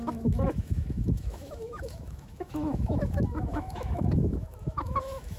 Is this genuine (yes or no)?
no